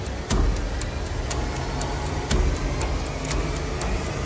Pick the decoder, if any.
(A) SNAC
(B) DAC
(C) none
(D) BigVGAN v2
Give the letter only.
C